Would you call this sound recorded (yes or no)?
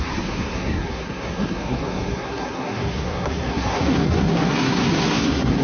no